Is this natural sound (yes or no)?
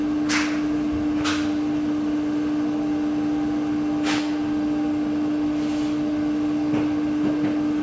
yes